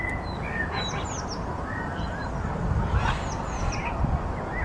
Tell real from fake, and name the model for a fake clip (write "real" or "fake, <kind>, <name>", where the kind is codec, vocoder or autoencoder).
real